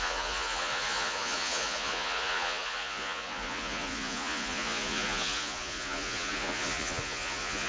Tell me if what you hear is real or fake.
fake